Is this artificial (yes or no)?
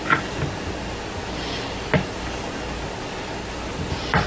no